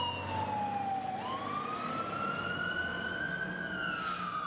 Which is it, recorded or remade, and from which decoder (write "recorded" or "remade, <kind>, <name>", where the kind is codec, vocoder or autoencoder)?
recorded